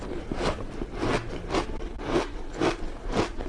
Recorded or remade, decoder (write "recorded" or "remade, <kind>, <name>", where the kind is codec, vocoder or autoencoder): recorded